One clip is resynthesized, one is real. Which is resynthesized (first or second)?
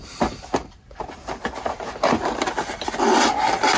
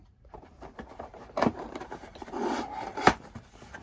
second